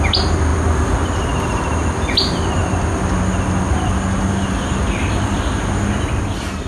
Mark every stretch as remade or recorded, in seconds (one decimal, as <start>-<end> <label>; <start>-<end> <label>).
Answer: 0.0-6.7 recorded